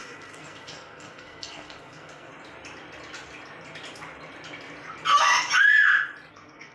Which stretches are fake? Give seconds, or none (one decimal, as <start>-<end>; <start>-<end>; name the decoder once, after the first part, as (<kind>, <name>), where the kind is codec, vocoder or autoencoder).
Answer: 0.0-2.3 (codec, SNAC); 6.3-6.7